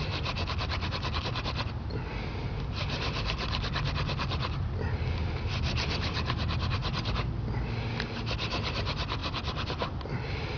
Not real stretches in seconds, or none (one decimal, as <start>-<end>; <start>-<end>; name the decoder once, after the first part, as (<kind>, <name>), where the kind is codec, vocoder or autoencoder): none